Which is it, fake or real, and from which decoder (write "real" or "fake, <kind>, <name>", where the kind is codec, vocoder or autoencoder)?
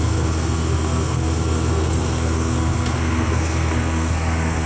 fake, codec, SNAC